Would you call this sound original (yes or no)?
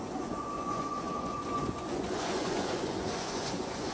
no